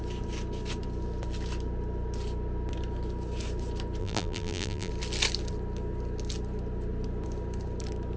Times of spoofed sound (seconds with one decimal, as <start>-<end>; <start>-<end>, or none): 4.0-4.9